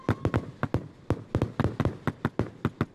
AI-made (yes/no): no